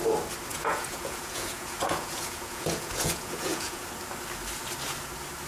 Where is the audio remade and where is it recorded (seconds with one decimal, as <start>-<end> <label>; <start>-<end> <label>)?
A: 0.0-0.5 recorded; 0.5-3.8 remade; 3.8-5.5 recorded